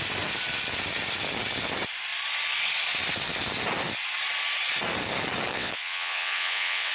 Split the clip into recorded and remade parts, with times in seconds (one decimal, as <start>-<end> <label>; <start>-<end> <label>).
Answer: 0.0-5.5 recorded; 5.5-6.9 remade